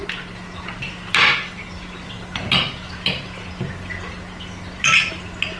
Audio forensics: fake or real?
real